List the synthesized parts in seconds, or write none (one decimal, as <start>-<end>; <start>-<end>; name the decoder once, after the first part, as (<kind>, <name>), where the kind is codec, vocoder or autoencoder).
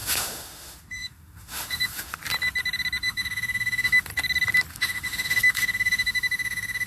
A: 0.0-2.2 (autoencoder, DAC-VAE); 3.0-4.1; 4.7-6.9